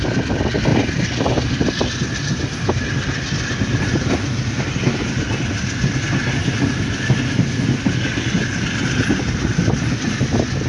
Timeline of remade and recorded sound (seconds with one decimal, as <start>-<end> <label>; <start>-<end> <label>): 0.0-0.7 recorded; 0.7-4.6 remade; 4.6-6.4 recorded; 6.4-6.9 remade; 6.9-10.7 recorded